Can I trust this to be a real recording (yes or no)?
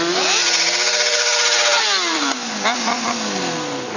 yes